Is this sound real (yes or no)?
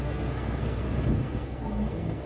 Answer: no